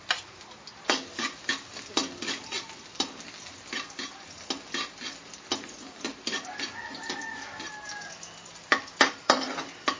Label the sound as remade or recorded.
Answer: recorded